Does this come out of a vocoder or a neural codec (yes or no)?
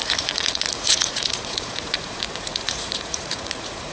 yes